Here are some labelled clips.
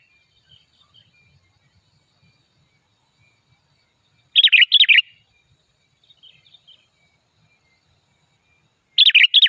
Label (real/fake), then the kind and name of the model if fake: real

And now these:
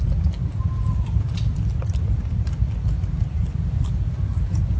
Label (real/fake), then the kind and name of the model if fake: real